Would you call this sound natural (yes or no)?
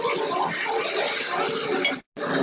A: yes